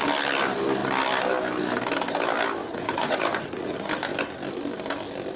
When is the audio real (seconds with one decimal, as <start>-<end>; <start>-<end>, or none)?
0.0-2.6; 3.9-5.4

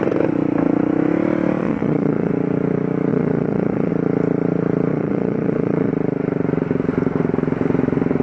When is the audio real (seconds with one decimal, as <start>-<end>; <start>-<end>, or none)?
0.0-1.6; 2.3-3.1; 3.9-4.9; 5.9-8.2

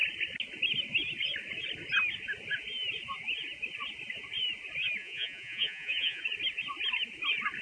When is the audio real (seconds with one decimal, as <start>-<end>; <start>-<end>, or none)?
0.0-5.0; 6.2-7.6